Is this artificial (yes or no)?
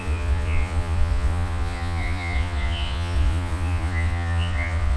yes